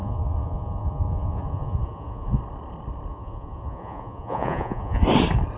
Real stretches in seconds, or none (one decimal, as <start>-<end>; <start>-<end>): 2.4-3.1; 5.0-5.6